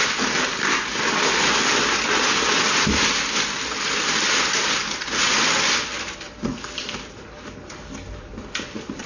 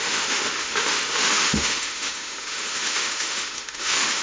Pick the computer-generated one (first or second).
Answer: second